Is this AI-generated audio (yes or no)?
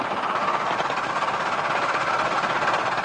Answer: no